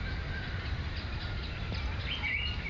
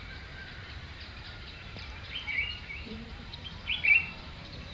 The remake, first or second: second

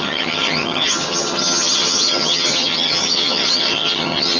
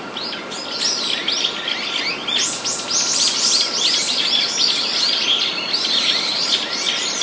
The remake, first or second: first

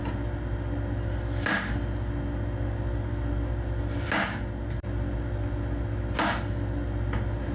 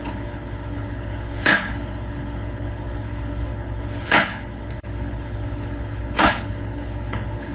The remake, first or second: second